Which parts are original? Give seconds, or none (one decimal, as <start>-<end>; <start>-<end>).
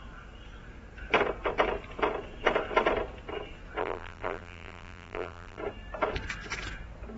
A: 0.0-3.8; 5.6-7.2